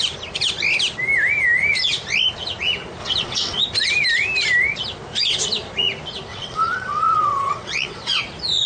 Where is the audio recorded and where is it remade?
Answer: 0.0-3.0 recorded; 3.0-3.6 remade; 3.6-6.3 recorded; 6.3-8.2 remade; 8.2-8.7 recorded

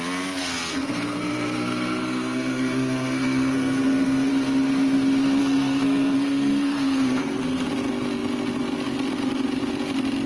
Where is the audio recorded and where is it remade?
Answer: 0.0-0.7 recorded; 0.7-4.3 remade; 4.3-5.4 recorded; 5.4-7.7 remade; 7.7-10.3 recorded

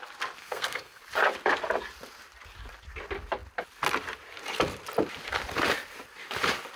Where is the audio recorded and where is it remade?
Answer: 0.0-0.4 recorded; 0.4-1.0 remade; 1.0-6.8 recorded

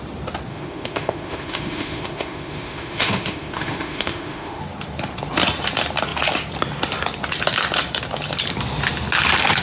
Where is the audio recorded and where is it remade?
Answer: 0.0-0.5 recorded; 0.5-4.6 remade; 4.6-9.6 recorded